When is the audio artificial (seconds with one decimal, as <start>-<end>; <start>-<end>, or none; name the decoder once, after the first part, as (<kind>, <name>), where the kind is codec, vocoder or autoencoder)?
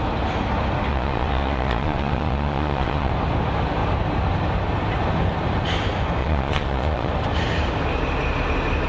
0.9-3.1 (vocoder, Vocos); 6.2-7.1